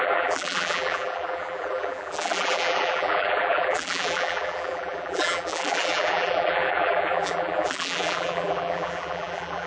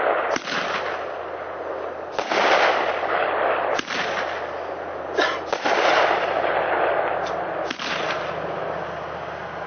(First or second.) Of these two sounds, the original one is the second